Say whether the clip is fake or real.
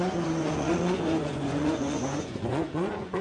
fake